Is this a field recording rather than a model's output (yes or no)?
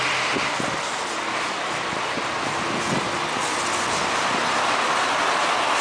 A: yes